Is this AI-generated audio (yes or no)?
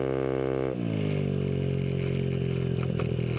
no